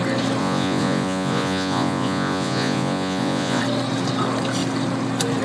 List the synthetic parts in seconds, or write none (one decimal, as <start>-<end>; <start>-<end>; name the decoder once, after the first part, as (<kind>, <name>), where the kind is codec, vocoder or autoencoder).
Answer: 0.4-3.6 (vocoder, Vocos)